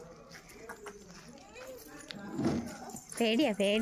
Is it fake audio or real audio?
real